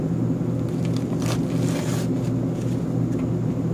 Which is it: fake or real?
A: real